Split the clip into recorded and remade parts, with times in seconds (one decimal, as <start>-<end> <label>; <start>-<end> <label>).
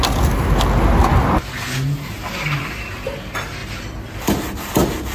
0.0-5.1 recorded